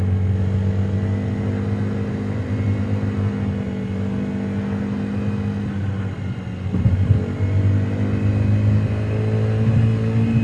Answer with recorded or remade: recorded